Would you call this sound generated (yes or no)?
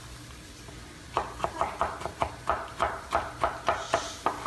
no